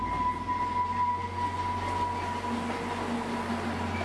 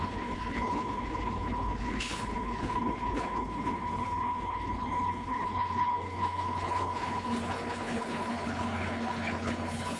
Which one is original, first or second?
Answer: first